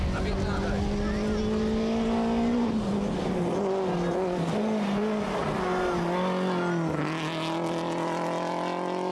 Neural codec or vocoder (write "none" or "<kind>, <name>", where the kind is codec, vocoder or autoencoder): none